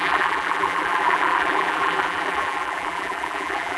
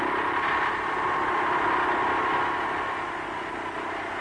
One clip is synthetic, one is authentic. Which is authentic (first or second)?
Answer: second